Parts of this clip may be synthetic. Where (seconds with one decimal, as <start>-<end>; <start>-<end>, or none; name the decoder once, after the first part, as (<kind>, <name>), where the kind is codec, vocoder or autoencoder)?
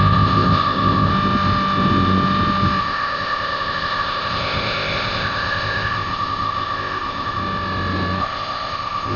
0.0-1.1 (codec, ZipCodec); 2.8-7.4; 8.2-9.2